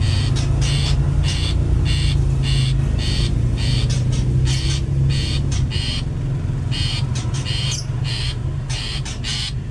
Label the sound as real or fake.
real